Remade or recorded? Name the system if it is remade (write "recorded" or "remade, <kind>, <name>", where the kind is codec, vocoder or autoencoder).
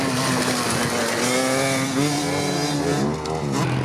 recorded